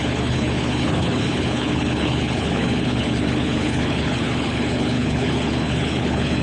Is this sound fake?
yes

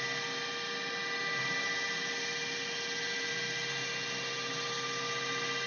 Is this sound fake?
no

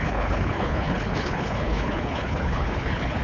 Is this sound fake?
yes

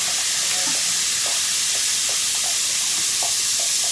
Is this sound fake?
no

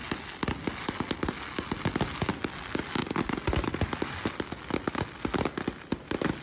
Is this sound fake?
no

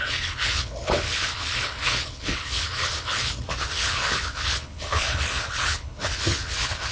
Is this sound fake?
yes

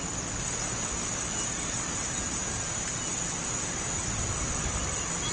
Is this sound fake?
no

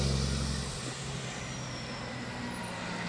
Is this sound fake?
no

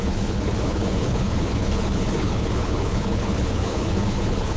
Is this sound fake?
yes